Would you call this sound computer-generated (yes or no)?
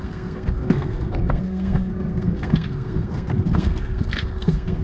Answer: yes